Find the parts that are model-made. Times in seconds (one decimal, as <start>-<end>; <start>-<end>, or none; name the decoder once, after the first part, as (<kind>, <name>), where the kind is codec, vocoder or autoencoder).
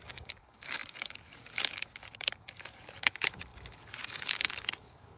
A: 0.0-5.2 (codec, DAC)